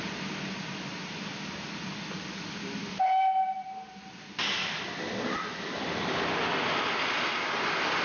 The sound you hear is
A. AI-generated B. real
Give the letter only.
B